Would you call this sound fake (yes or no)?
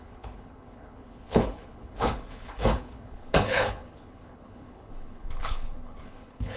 yes